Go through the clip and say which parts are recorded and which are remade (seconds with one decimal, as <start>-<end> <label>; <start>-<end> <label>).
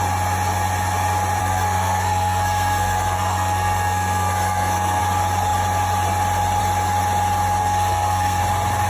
0.0-1.4 recorded; 1.4-5.0 remade; 5.0-7.6 recorded; 7.6-8.4 remade; 8.4-8.9 recorded